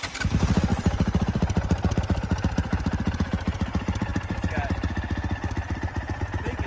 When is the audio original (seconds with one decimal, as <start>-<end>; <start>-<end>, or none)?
none